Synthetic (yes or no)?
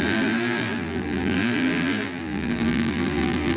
yes